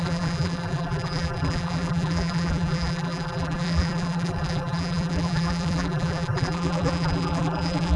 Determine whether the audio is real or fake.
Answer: fake